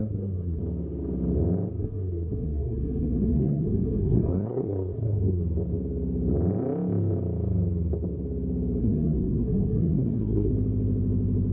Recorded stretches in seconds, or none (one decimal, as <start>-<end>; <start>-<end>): 0.6-1.8; 5.4-8.8; 10.5-11.5

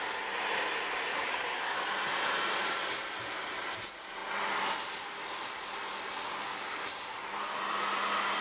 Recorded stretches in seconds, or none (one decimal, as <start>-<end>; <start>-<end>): 0.0-1.1; 1.8-8.4